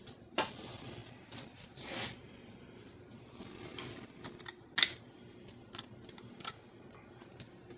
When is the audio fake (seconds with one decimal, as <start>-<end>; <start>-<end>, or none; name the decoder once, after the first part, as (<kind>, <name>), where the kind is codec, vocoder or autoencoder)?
none